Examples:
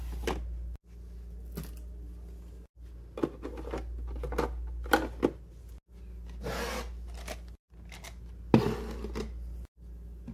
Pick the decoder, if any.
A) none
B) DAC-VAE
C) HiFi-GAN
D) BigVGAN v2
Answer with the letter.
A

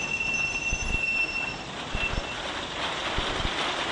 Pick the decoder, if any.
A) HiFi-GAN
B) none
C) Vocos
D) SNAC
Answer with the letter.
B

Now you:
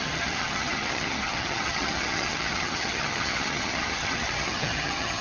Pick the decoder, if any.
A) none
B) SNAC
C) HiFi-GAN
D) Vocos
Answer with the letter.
C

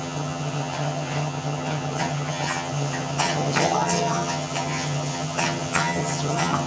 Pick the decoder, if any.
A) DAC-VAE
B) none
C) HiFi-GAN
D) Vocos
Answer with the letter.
C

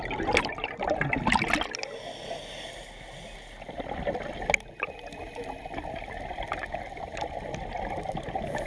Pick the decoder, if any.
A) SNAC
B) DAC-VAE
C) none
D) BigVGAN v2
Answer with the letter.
C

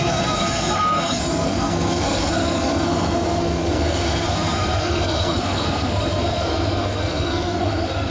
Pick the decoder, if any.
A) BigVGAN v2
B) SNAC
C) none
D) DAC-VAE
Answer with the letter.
B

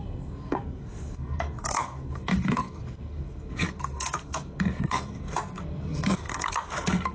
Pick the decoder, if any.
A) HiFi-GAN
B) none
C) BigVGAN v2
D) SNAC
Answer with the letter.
D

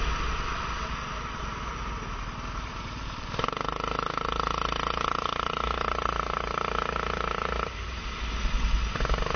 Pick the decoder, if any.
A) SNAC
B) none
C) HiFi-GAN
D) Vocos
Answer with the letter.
B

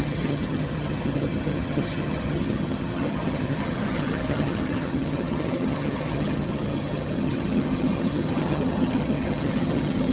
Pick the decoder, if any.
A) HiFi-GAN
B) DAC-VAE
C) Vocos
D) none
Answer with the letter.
A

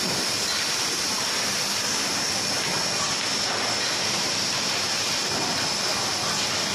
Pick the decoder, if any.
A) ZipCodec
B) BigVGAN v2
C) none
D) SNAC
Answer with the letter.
C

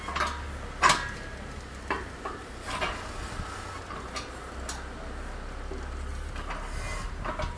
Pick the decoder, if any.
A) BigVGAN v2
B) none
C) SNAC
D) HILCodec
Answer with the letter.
B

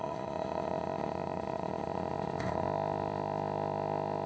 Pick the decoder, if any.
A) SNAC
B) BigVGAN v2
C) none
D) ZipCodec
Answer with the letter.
D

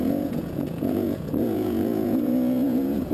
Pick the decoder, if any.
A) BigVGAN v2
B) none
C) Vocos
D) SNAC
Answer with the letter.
C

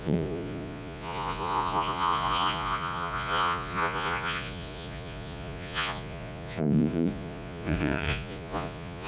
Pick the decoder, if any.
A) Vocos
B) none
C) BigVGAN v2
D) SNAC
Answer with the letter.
A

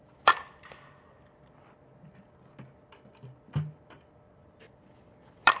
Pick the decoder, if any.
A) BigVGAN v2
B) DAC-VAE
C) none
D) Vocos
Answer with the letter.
C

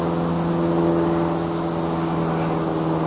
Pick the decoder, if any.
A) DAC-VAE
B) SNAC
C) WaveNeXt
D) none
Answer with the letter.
D